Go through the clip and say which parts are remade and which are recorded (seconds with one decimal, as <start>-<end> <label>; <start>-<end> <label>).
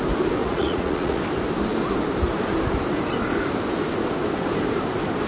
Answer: 0.0-0.4 recorded; 0.4-1.2 remade; 1.2-5.3 recorded